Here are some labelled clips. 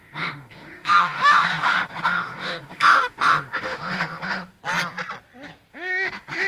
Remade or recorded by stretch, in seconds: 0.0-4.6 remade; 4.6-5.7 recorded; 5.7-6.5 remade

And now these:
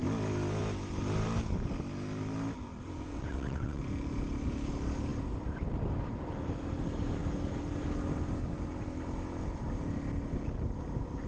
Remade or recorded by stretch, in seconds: 0.0-3.1 recorded; 3.1-3.8 remade; 3.8-11.3 recorded

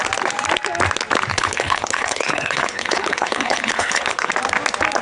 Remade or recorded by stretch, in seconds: 0.0-1.3 recorded; 1.3-4.3 remade; 4.3-5.0 recorded

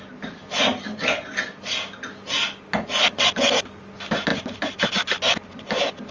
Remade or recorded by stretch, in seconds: 0.0-4.3 recorded; 4.3-4.9 remade; 4.9-6.1 recorded

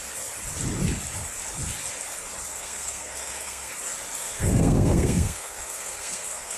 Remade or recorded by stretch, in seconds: 0.0-2.5 recorded; 2.5-3.7 remade; 3.7-4.2 recorded; 4.2-6.6 remade

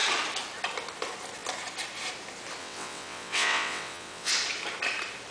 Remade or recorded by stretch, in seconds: 0.0-2.6 recorded; 2.6-4.3 remade; 4.3-5.3 recorded

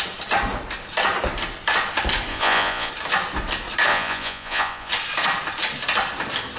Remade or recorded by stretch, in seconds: 0.0-2.3 recorded; 2.3-2.9 remade; 2.9-3.9 recorded; 3.9-4.9 remade; 4.9-6.6 recorded

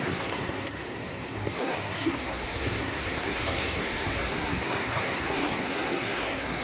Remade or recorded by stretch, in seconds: 0.0-6.6 remade